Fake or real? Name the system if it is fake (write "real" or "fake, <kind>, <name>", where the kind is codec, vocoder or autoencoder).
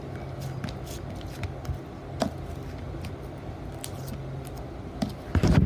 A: real